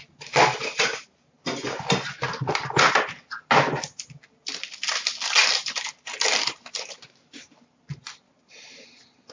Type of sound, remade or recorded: recorded